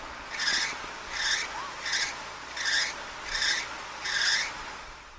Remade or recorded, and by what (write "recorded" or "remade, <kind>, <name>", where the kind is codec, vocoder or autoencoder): recorded